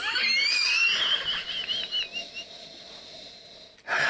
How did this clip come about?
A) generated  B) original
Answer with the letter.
B